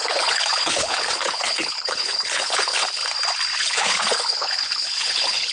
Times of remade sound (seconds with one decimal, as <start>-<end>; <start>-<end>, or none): 0.0-3.0; 3.7-5.5